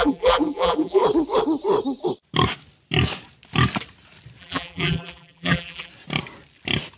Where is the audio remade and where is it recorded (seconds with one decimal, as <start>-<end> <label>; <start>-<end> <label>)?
0.0-1.0 remade; 1.0-4.4 recorded; 4.4-5.9 remade; 5.9-7.0 recorded